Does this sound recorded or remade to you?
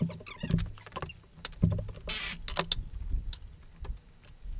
recorded